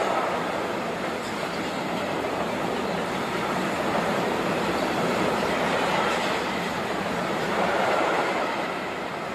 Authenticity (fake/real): fake